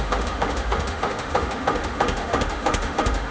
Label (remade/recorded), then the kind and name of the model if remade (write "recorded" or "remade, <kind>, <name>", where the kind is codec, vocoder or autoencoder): remade, autoencoder, DAC-VAE